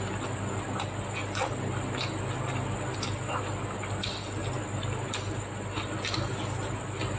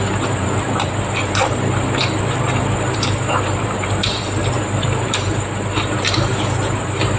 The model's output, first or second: second